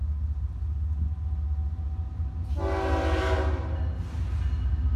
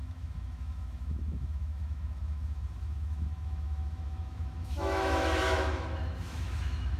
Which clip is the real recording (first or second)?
first